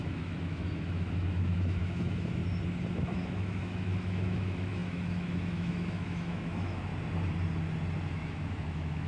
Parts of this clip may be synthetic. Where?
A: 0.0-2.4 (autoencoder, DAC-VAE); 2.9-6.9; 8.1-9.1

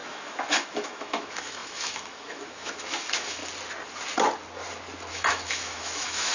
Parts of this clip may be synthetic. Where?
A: 0.0-3.4 (autoencoder, DAC-VAE); 5.1-6.3

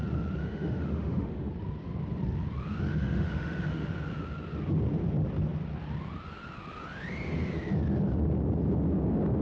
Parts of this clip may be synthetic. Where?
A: 0.4-1.5 (autoencoder, DAC-VAE); 2.9-3.9